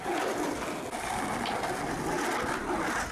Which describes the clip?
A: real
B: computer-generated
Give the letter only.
A